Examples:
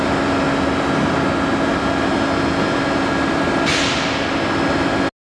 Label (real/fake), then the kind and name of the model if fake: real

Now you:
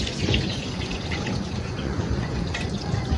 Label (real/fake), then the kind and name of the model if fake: fake, vocoder, Vocos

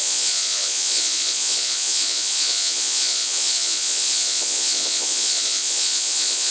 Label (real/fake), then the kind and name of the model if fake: fake, vocoder, Vocos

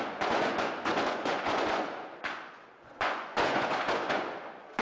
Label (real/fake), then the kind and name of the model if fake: fake, vocoder, Vocos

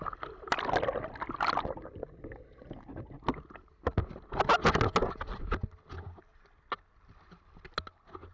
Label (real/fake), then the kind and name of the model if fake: real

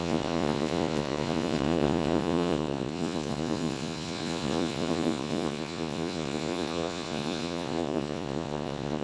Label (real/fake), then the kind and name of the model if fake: fake, vocoder, Vocos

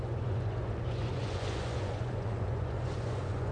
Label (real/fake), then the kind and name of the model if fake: fake, vocoder, Vocos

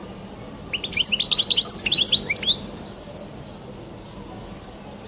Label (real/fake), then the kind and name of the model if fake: real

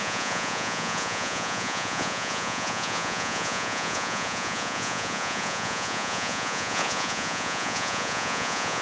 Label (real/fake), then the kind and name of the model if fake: fake, vocoder, Vocos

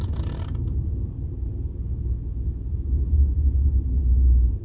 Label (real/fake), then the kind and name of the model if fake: real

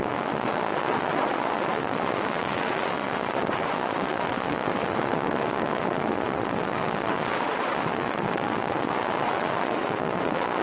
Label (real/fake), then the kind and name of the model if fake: fake, vocoder, Vocos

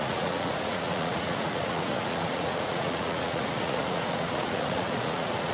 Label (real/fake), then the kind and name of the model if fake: fake, vocoder, Vocos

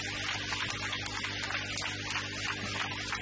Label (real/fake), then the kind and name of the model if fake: real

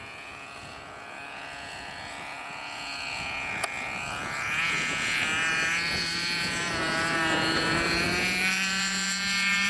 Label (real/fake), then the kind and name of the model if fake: fake, vocoder, Vocos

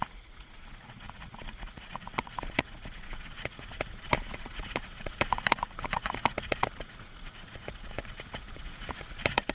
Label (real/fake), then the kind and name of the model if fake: fake, vocoder, Vocos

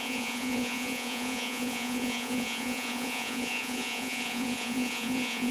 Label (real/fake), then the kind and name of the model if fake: fake, vocoder, Vocos